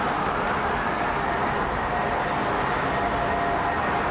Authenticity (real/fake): real